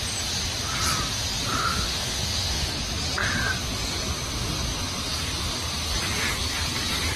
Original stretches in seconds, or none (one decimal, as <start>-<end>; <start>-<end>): 0.0-1.6; 2.8-7.2

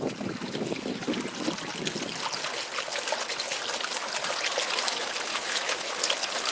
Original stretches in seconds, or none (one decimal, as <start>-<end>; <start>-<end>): 0.0-5.3; 5.9-6.5

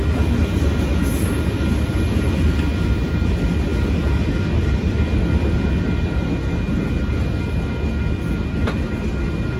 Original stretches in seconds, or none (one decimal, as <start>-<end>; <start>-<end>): 0.0-9.6

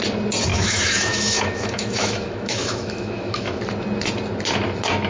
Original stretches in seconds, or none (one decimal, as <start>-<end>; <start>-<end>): 0.0-0.5; 3.6-5.1

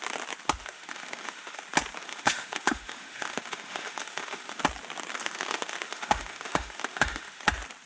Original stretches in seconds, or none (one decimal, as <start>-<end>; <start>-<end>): 0.0-0.6; 1.6-2.0; 4.6-5.1; 7.4-7.9